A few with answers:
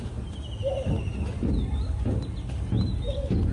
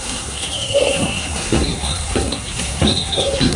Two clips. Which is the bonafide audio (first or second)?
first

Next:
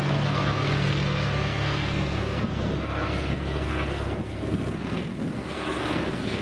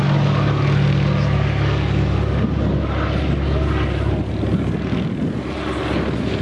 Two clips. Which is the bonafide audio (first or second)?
second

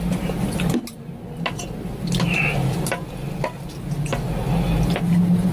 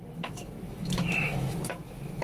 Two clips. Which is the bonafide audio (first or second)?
first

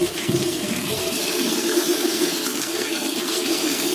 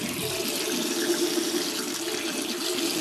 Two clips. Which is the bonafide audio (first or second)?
second